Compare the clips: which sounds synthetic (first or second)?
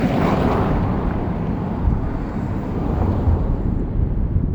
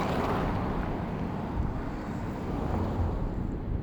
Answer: first